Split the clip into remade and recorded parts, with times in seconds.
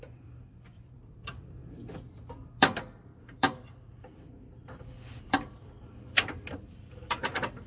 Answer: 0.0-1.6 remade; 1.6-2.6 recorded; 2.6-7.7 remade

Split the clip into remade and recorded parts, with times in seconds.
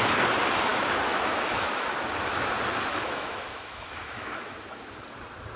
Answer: 0.0-0.7 recorded; 0.7-1.9 remade; 1.9-2.9 recorded; 2.9-4.5 remade; 4.5-5.6 recorded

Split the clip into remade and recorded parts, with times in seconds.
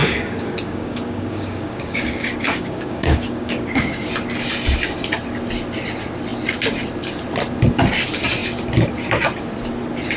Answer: 0.0-4.1 remade; 4.1-10.2 recorded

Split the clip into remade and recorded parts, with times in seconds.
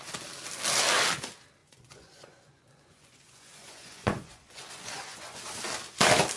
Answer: 0.0-1.6 recorded; 1.6-5.4 remade; 5.4-6.4 recorded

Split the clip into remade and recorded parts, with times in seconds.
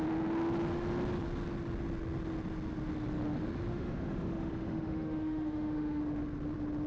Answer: 0.0-3.7 recorded; 3.7-6.0 remade; 6.0-6.9 recorded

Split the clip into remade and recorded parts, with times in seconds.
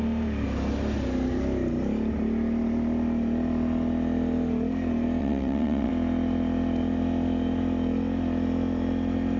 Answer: 0.0-5.2 recorded; 5.2-5.9 remade; 5.9-9.4 recorded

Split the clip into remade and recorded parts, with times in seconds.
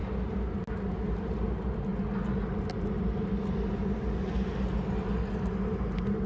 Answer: 0.0-6.3 recorded